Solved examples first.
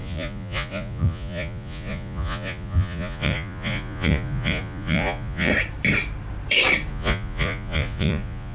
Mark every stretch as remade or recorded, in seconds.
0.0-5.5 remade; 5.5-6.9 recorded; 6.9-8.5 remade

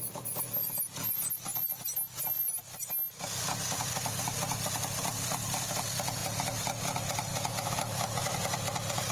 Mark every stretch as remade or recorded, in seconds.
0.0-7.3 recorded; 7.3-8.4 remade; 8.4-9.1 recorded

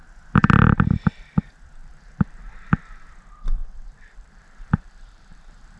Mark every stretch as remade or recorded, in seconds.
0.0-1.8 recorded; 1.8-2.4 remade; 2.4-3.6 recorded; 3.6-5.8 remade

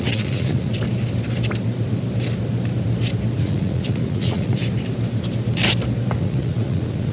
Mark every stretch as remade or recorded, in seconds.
0.0-0.7 remade; 0.7-3.4 recorded; 3.4-4.6 remade; 4.6-6.2 recorded; 6.2-7.1 remade